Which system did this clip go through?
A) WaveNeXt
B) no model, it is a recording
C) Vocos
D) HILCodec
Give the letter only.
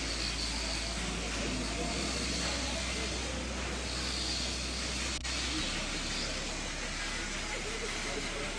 B